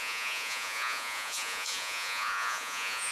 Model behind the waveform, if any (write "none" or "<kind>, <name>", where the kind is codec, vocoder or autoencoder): vocoder, Vocos